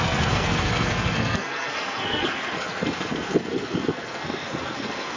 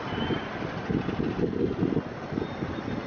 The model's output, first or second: first